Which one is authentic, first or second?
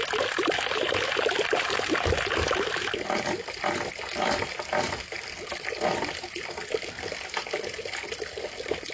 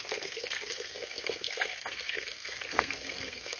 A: first